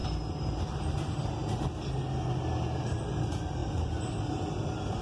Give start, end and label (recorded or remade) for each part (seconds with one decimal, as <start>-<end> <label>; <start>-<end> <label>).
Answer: 0.0-3.0 recorded; 3.0-5.0 remade